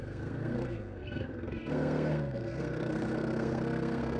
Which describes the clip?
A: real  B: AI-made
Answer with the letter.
B